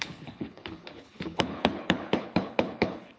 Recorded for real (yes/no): no